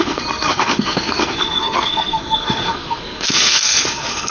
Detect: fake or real fake